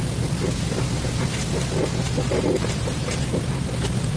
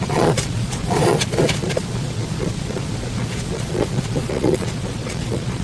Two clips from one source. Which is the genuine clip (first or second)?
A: first